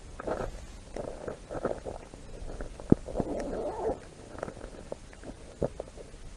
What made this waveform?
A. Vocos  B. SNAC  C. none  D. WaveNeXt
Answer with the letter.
C